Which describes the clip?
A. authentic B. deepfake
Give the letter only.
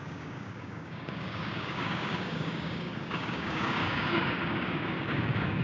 B